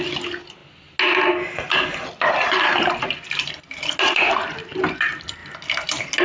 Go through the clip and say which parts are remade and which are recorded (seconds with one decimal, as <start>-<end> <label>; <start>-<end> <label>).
0.0-6.2 recorded